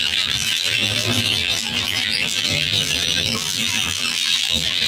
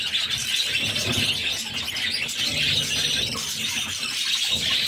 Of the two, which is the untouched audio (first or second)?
second